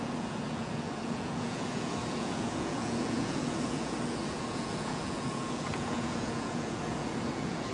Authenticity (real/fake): fake